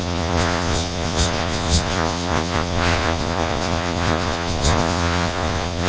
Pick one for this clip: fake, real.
fake